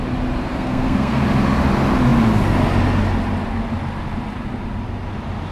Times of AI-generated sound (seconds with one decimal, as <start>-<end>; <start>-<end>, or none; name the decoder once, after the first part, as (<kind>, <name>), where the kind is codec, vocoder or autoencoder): 0.5-1.2 (codec, SNAC)